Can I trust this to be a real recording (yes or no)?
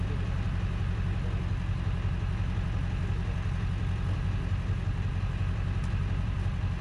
yes